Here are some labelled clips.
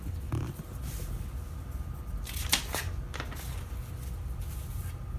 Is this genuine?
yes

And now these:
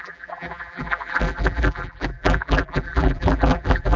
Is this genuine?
no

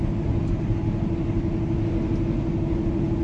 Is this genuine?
yes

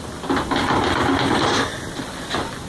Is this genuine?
no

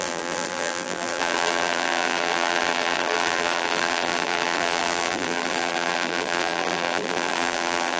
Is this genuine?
no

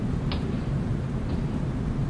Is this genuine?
yes